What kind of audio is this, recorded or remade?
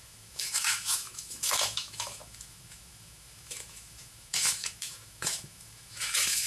remade